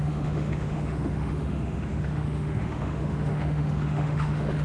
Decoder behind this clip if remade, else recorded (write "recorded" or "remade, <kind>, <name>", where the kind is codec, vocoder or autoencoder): remade, autoencoder, DAC-VAE